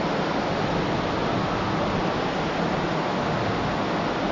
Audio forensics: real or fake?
real